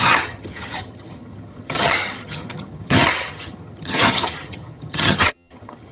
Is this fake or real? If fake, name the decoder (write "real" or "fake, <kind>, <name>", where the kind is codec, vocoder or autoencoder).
fake, vocoder, HiFi-GAN